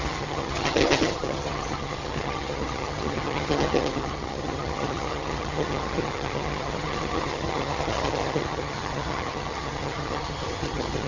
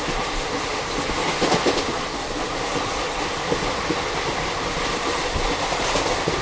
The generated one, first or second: first